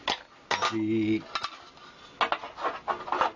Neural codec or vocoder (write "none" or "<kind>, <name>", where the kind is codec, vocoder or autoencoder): none